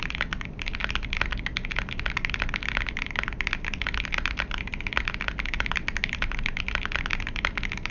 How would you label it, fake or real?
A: real